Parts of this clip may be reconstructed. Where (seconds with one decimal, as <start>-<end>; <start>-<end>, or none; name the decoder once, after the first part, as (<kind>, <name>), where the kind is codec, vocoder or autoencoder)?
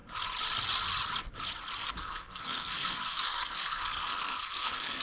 1.8-5.0 (codec, SNAC)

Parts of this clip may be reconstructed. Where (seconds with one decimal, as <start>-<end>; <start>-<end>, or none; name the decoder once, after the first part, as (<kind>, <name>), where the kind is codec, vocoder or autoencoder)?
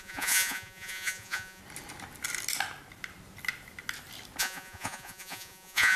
0.0-1.6 (vocoder, Vocos); 4.4-6.0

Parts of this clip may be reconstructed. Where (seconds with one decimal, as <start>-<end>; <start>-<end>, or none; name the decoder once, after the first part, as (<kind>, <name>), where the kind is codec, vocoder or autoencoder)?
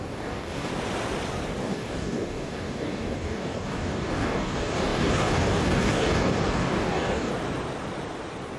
0.0-0.7 (codec, DAC); 1.6-7.3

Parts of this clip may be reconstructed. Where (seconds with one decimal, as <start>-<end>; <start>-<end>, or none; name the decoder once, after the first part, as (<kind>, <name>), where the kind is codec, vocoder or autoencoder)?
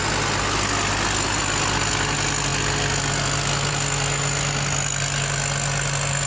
none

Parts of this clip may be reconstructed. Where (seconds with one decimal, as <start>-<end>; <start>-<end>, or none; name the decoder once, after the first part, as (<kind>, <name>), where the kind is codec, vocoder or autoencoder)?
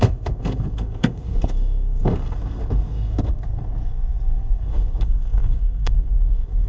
0.0-6.7 (codec, SNAC)